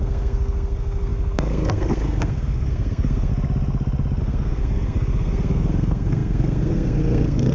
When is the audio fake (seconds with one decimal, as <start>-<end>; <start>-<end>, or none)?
0.0-3.3; 4.2-7.5